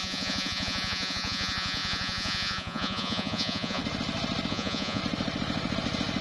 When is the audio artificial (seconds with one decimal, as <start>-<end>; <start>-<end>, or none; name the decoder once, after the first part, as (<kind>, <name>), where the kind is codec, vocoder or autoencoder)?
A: 0.0-3.8 (vocoder, Vocos); 4.5-5.0

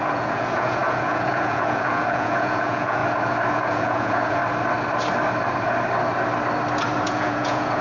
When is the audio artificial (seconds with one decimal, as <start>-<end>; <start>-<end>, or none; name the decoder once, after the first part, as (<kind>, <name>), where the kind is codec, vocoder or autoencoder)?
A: 0.0-3.0 (vocoder, Vocos); 3.5-4.4; 7.0-7.8

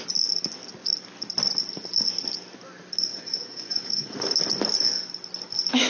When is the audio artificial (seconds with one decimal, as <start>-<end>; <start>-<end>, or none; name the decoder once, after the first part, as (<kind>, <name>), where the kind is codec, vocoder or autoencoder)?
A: 3.1-4.3 (vocoder, Vocos)

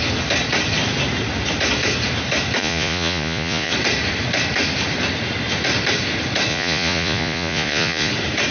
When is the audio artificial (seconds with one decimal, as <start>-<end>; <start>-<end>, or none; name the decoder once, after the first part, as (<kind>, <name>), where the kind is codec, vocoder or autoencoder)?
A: 2.6-3.7 (vocoder, Vocos); 6.5-8.1

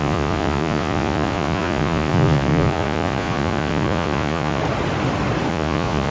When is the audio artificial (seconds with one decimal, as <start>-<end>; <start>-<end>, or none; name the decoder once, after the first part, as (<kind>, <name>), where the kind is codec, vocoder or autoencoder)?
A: 0.0-4.6 (vocoder, Vocos); 5.5-6.1

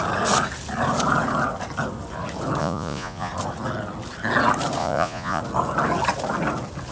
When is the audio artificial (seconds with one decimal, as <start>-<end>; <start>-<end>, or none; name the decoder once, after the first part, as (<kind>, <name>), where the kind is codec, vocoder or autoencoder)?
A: 2.6-3.3 (vocoder, Vocos); 4.8-5.4

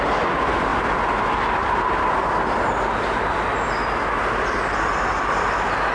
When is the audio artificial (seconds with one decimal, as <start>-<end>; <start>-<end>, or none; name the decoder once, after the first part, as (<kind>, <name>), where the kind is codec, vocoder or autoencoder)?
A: none